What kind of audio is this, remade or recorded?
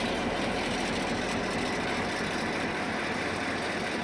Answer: recorded